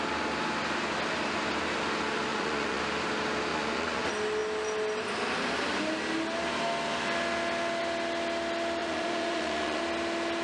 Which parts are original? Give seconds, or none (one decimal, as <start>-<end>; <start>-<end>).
0.0-2.3; 2.8-3.5; 4.0-8.8; 9.8-10.4